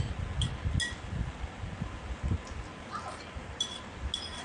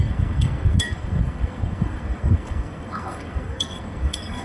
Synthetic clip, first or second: second